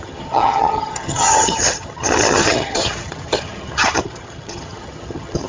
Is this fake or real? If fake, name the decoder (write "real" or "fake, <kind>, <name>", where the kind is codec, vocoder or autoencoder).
fake, vocoder, HiFi-GAN